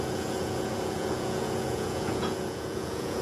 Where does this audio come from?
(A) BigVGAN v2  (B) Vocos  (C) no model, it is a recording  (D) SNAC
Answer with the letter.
B